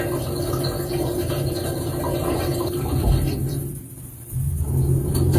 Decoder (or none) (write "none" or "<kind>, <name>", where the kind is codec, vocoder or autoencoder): none